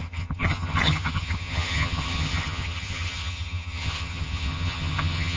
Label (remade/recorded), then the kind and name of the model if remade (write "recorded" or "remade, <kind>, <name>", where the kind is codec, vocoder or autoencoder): remade, vocoder, HiFi-GAN